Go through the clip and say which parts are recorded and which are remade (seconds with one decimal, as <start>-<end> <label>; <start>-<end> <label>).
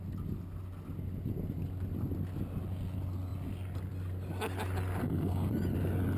0.0-5.0 recorded; 5.0-5.5 remade; 5.5-6.2 recorded